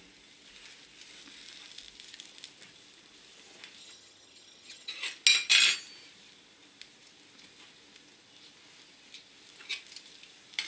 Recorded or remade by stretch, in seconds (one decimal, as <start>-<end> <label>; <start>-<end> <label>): 0.0-3.8 recorded; 3.8-4.9 remade; 4.9-10.7 recorded

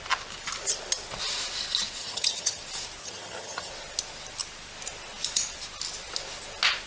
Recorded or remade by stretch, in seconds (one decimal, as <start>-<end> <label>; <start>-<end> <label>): 0.0-2.0 recorded; 2.0-2.6 remade; 2.6-3.0 recorded; 3.0-3.7 remade; 3.7-6.9 recorded